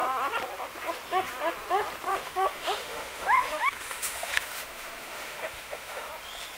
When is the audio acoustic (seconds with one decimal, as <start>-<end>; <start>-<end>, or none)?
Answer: 0.0-2.1; 6.1-6.6